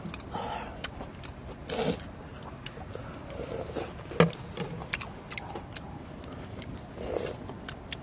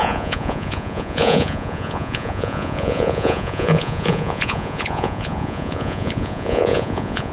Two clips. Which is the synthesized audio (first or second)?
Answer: second